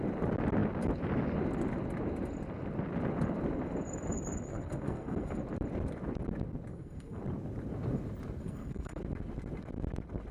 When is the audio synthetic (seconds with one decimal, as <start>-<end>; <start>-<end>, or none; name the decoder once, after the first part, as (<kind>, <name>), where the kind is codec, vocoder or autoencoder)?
4.5-5.4 (codec, SNAC); 6.7-7.2; 8.4-9.0